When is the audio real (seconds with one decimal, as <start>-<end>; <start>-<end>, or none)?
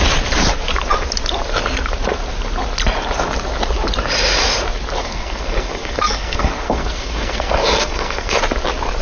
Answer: 0.0-5.0; 8.4-9.0